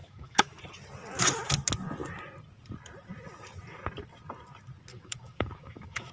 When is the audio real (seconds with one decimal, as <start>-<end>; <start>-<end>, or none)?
0.6-4.9